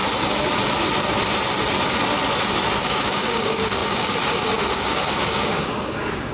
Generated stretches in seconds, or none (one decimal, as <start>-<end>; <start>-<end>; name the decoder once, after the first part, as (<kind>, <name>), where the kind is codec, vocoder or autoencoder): 2.8-6.3 (codec, DAC)

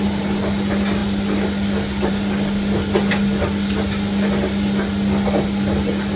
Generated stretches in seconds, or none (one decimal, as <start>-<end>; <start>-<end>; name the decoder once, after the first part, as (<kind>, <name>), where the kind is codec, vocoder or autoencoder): none

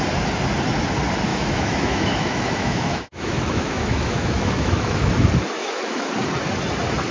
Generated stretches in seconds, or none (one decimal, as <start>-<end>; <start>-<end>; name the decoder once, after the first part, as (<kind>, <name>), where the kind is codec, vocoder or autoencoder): 1.3-5.1 (autoencoder, DAC-VAE); 5.6-6.1